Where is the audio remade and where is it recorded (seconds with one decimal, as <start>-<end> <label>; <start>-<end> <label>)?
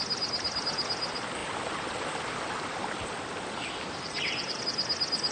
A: 0.0-1.4 recorded; 1.4-4.6 remade; 4.6-5.3 recorded